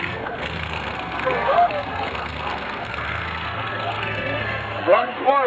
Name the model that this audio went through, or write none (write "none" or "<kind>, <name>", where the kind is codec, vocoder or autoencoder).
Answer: codec, SNAC